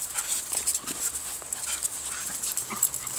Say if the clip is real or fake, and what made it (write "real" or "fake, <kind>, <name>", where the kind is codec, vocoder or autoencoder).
real